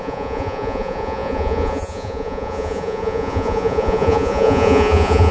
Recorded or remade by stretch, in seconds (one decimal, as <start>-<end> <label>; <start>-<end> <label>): 0.0-5.3 remade